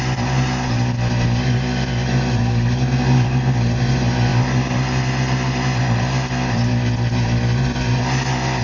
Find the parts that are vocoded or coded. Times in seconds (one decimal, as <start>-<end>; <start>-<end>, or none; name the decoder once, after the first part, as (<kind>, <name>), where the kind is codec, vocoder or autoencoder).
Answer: none